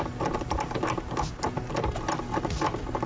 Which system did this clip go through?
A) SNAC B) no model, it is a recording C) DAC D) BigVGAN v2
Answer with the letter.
B